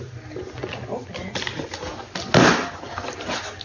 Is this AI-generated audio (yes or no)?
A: no